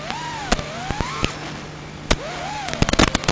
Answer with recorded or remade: recorded